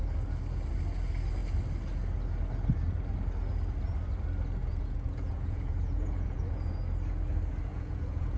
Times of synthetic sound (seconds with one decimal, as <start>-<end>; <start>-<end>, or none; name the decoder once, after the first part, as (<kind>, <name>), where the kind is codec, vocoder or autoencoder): 4.6-6.8 (vocoder, Vocos); 7.7-8.4